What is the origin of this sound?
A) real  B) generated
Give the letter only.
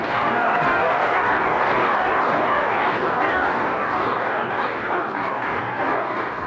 B